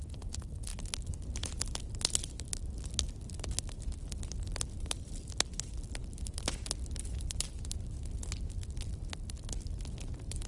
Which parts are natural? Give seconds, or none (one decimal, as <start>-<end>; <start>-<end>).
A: 0.0-10.5